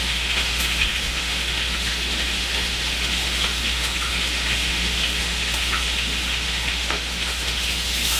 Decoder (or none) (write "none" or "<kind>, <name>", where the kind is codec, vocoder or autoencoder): autoencoder, DAC-VAE